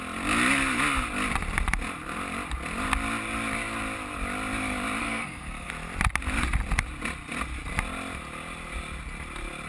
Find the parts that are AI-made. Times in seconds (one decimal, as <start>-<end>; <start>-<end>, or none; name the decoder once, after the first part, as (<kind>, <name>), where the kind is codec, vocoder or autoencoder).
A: 5.0-5.7 (codec, SNAC)